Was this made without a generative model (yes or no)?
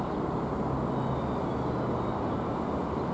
yes